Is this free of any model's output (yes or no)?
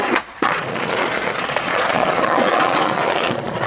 no